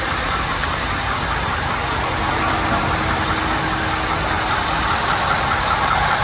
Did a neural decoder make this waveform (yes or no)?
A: no